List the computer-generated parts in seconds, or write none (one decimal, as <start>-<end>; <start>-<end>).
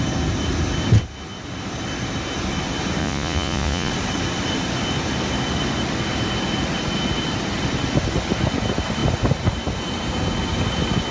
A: 3.0-3.9